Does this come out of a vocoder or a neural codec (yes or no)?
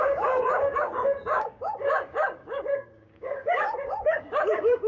yes